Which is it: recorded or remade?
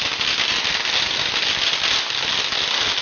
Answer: recorded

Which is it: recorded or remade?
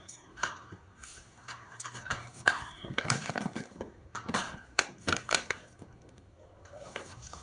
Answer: remade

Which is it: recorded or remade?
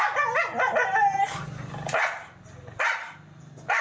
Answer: recorded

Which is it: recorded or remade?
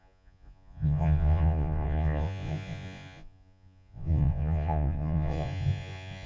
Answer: remade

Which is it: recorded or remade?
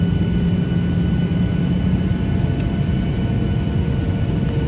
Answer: recorded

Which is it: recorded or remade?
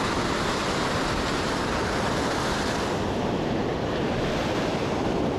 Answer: recorded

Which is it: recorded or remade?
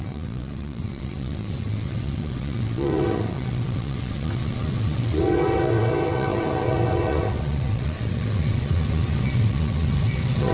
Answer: remade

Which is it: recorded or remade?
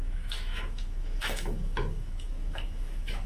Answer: remade